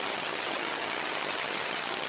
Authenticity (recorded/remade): remade